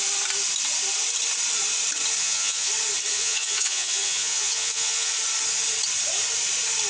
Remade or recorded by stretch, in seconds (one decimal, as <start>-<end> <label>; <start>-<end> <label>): 0.0-2.2 recorded; 2.2-2.7 remade; 2.7-3.1 recorded; 3.1-5.1 remade; 5.1-6.9 recorded